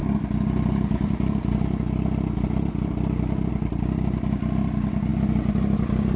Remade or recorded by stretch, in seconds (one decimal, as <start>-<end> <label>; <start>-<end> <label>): 0.0-6.2 recorded